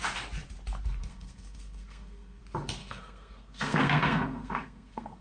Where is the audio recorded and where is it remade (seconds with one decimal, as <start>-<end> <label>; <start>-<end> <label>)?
0.0-1.0 recorded; 1.0-2.4 remade; 2.4-2.8 recorded; 2.8-5.2 remade